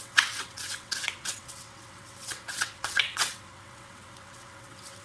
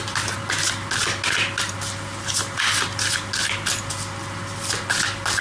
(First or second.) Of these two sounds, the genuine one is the second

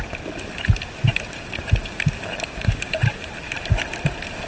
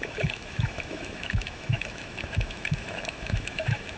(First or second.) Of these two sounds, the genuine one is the first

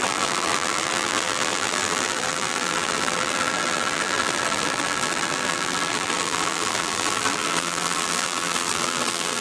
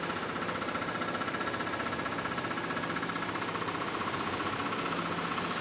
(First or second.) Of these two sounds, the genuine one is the second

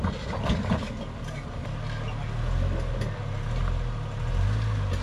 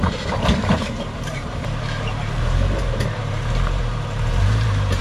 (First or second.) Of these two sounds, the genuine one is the first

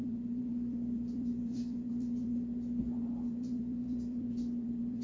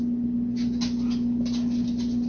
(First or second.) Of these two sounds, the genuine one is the second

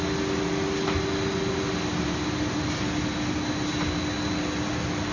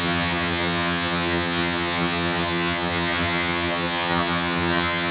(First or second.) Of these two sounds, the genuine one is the first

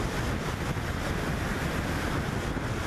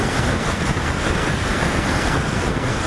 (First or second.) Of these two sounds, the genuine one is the first